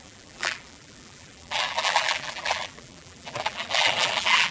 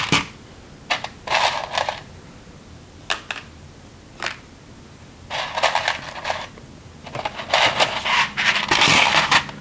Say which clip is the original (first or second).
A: second